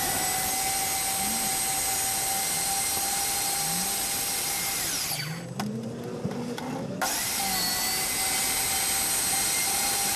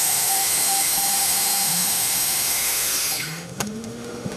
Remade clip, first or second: second